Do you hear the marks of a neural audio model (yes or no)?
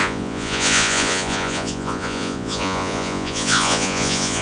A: yes